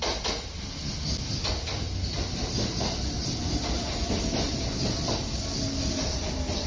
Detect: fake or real real